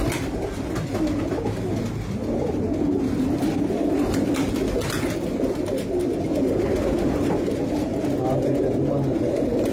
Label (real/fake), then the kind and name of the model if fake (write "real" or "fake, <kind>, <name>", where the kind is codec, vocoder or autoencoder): real